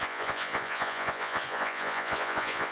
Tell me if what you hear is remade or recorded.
remade